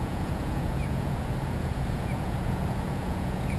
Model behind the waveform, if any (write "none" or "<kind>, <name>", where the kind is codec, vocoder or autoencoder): vocoder, Vocos